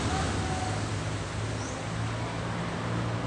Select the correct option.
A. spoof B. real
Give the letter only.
B